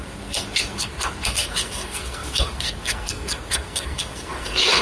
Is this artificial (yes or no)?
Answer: yes